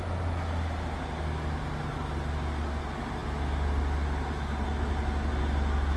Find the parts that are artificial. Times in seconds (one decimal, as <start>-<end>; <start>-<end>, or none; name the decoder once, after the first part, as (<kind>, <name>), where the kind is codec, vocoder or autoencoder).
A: none